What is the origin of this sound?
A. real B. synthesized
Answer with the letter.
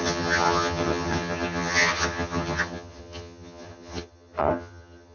B